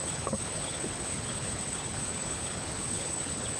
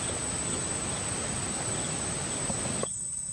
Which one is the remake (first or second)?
first